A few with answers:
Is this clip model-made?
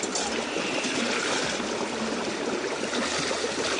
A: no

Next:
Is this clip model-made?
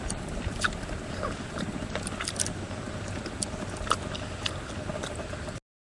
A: no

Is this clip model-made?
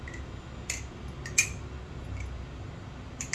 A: no